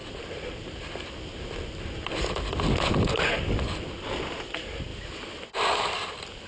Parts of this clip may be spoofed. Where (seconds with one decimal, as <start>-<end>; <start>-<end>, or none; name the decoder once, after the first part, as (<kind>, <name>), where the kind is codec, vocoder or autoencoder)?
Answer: none